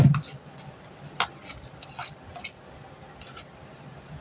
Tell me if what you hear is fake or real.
real